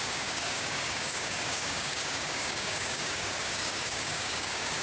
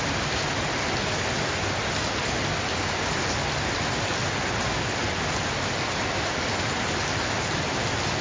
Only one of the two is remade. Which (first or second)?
first